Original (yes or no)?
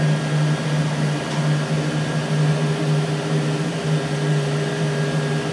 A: yes